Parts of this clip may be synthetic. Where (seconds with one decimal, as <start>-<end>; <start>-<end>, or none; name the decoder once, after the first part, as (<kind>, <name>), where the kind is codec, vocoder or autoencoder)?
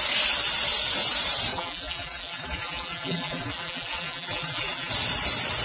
1.5-4.9 (vocoder, BigVGAN v2)